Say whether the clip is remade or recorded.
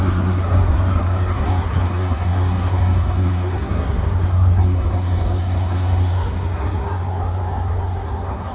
remade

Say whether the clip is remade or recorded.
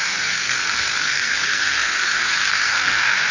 remade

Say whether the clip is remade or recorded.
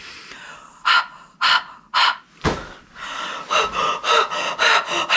recorded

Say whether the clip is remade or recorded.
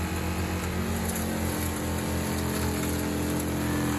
recorded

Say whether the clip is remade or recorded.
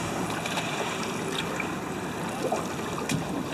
recorded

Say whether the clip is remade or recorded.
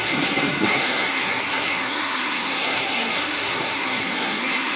remade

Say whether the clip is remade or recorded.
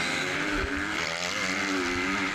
recorded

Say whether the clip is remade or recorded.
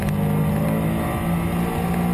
recorded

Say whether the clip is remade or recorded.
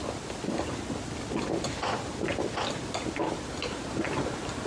recorded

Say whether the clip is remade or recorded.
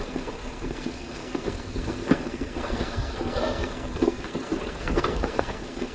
remade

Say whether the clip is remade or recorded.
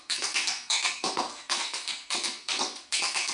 remade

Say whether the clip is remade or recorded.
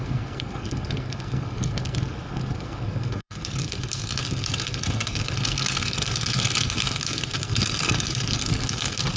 remade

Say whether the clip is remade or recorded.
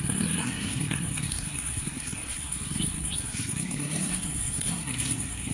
remade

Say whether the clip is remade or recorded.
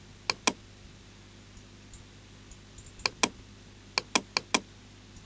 recorded